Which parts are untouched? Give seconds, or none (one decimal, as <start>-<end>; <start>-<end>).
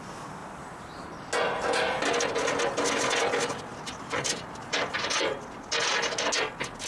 0.0-0.4; 1.3-3.7; 5.4-6.9